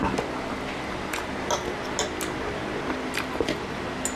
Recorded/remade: recorded